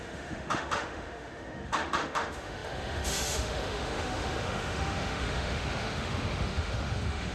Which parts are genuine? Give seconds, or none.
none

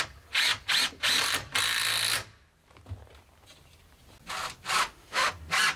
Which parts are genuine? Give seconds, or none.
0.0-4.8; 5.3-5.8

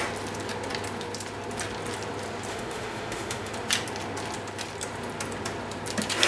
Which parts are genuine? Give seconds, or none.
0.0-2.5; 3.5-6.3